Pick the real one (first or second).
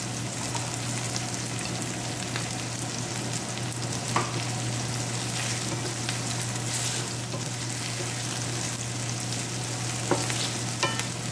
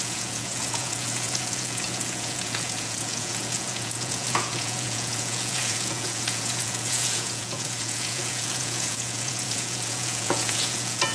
first